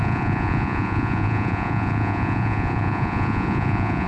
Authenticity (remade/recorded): remade